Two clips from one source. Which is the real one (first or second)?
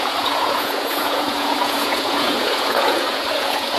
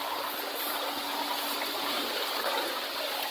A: second